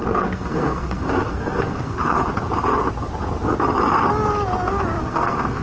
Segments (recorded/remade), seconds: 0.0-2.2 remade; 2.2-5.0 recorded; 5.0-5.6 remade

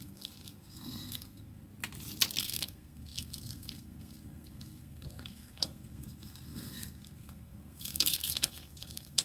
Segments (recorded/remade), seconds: 0.0-1.7 remade; 1.7-2.4 recorded; 2.4-9.2 remade

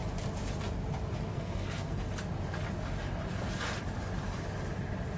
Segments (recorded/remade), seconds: 0.0-1.3 recorded; 1.3-2.0 remade; 2.0-5.2 recorded

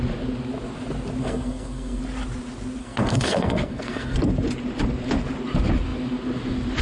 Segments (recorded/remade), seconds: 0.0-1.2 recorded; 1.2-2.0 remade; 2.0-2.8 recorded; 2.8-4.3 remade; 4.3-6.8 recorded

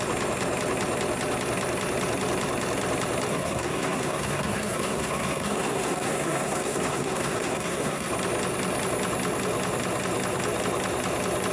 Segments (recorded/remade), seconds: 0.0-3.3 recorded; 3.3-8.1 remade; 8.1-11.5 recorded